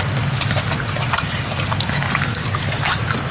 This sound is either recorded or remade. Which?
recorded